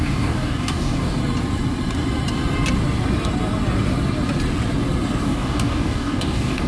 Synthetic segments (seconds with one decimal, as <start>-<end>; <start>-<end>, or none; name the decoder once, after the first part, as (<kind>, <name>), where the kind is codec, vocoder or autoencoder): 0.0-1.2 (codec, DAC); 5.2-6.7